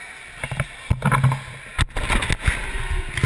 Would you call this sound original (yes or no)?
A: yes